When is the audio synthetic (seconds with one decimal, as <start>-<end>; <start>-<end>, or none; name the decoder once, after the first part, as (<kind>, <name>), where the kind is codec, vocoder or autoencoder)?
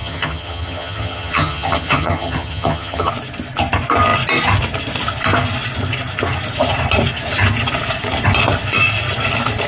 0.0-3.1 (vocoder, HiFi-GAN)